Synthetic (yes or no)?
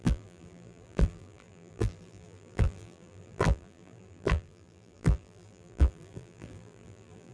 yes